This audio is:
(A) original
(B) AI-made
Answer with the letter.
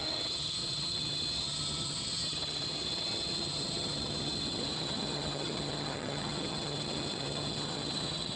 B